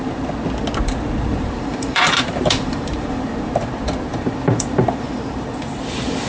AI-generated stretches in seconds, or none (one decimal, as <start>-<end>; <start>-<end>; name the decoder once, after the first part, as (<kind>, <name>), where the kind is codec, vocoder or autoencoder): 1.3-3.6 (vocoder, BigVGAN v2); 4.1-5.8